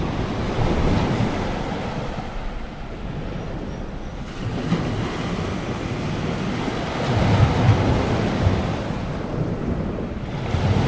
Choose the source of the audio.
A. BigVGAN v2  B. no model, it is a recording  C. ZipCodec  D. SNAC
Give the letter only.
B